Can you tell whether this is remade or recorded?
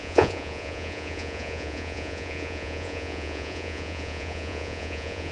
remade